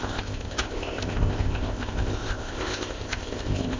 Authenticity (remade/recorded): remade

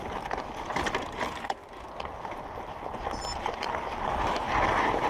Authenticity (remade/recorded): recorded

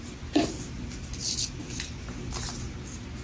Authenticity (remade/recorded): recorded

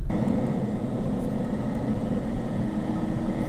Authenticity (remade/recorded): remade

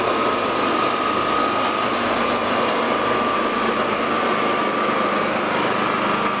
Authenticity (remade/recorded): recorded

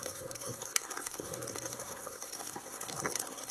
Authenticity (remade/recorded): remade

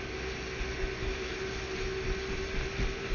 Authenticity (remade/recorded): recorded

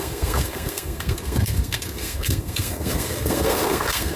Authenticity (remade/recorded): remade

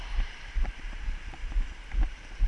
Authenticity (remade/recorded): remade